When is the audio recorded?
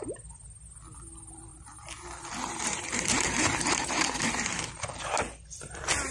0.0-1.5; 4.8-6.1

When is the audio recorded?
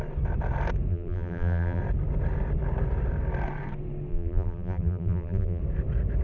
0.0-0.9; 1.8-4.1; 5.6-6.2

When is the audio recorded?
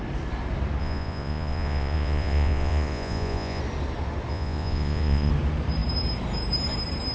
0.0-0.8; 3.6-4.3; 5.3-7.1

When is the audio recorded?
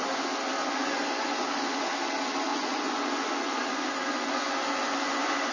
0.0-0.6; 1.8-2.5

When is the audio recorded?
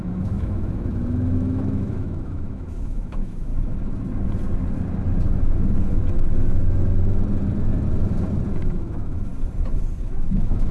3.5-8.6; 9.3-10.0